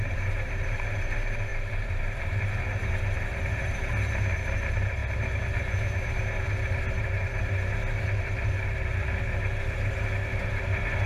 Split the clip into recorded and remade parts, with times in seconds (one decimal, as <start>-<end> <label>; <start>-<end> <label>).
0.0-5.0 remade; 5.0-7.0 recorded; 7.0-11.1 remade